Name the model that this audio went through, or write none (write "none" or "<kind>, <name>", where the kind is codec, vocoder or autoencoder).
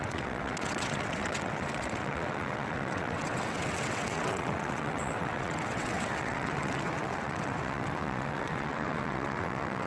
vocoder, WaveNeXt